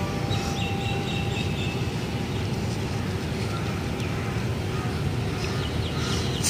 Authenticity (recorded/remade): recorded